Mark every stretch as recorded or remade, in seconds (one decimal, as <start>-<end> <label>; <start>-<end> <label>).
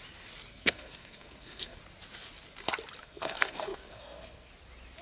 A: 0.0-0.5 recorded; 0.5-1.8 remade; 1.8-3.0 recorded; 3.0-4.5 remade; 4.5-5.0 recorded